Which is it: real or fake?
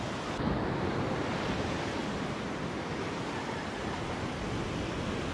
real